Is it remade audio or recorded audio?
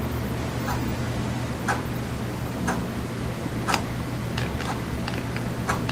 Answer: recorded